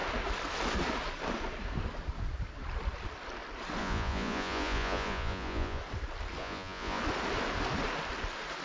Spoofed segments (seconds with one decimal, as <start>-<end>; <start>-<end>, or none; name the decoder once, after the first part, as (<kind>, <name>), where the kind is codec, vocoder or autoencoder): 3.8-5.8 (vocoder, Vocos); 6.4-7.0